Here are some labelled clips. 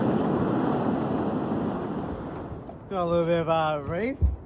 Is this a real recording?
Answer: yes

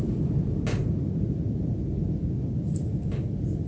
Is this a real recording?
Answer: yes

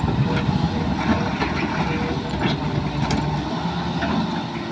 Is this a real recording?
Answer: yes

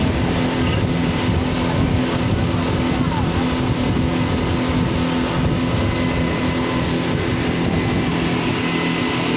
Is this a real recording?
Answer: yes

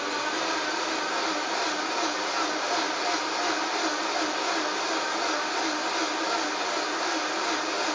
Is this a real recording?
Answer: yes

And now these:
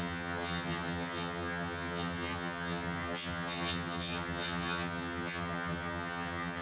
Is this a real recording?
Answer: no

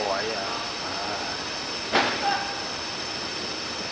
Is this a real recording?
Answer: yes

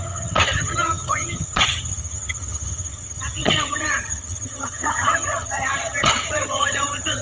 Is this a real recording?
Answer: no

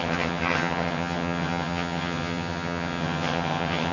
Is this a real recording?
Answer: no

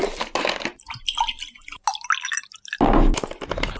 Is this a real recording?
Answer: yes